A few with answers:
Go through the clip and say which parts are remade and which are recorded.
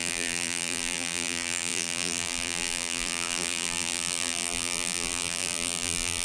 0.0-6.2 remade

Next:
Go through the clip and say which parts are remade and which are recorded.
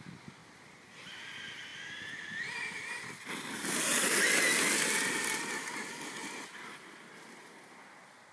0.0-0.4 recorded; 0.4-1.2 remade; 1.2-6.2 recorded; 6.2-8.3 remade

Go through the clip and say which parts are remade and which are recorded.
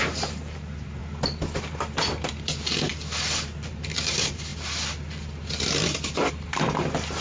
0.0-1.0 remade; 1.0-2.4 recorded; 2.4-2.9 remade; 2.9-3.7 recorded; 3.7-4.5 remade; 4.5-6.3 recorded; 6.3-7.2 remade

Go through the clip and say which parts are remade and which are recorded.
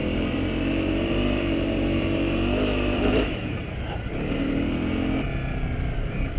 0.0-3.8 remade; 3.8-6.4 recorded